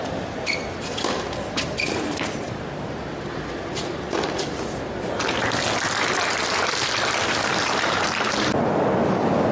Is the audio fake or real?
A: real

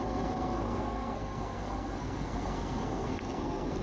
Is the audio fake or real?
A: fake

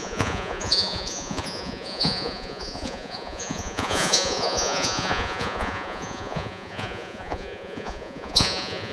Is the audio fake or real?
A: fake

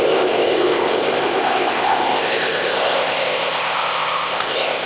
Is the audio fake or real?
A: fake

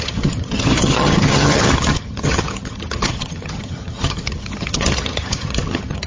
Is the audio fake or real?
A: fake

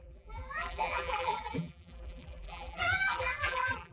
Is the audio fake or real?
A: fake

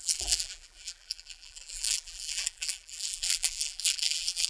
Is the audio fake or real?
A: fake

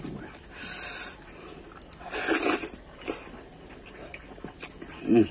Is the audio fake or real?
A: real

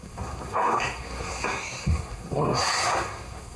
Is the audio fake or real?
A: fake